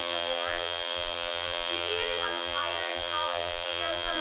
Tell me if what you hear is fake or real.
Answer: fake